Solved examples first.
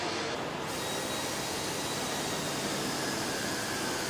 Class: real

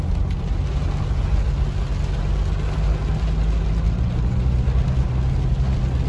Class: real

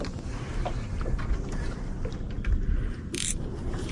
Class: real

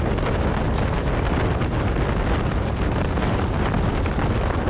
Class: real